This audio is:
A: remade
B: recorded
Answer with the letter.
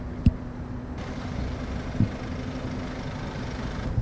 B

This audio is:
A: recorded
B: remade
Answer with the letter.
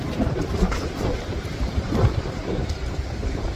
B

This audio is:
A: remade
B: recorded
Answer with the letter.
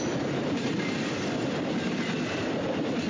B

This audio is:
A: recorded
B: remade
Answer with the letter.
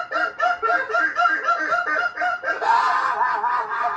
A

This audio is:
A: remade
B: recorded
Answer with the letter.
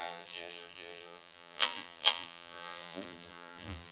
A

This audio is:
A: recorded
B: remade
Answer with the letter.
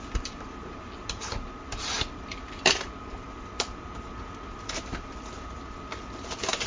B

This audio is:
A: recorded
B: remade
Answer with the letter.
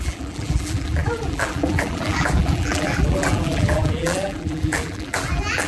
B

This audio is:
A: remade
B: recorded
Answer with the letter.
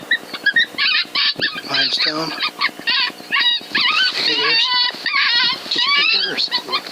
B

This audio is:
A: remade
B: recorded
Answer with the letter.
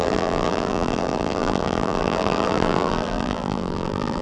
A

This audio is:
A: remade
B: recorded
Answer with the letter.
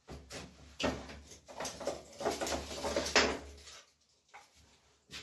B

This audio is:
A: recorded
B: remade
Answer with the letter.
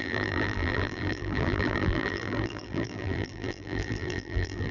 B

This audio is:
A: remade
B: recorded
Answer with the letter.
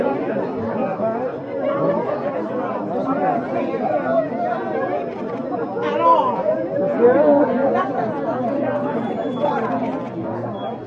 B